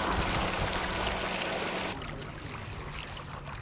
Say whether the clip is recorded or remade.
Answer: recorded